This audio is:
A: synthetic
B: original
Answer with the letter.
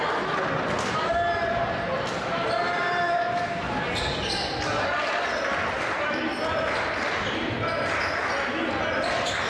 B